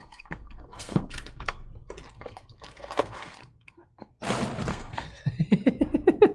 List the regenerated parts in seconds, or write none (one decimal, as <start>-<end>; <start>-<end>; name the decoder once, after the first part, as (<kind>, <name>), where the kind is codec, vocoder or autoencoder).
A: 0.0-1.7 (codec, SNAC); 2.1-4.2; 4.7-5.2